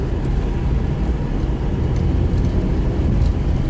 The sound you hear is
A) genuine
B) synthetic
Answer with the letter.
A